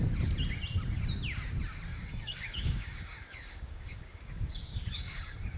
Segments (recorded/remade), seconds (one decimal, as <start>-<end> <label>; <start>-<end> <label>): 0.0-1.9 recorded; 1.9-5.6 remade